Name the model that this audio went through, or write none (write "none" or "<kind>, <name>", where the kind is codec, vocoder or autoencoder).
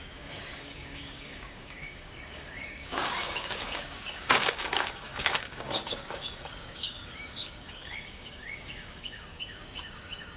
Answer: codec, DAC